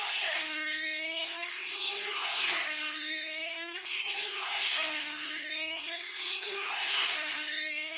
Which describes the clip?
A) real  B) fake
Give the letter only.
B